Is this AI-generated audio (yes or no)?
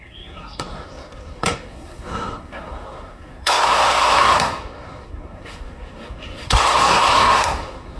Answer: yes